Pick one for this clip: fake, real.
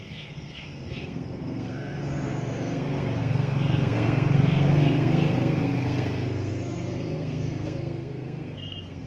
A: fake